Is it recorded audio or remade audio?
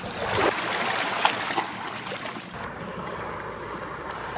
recorded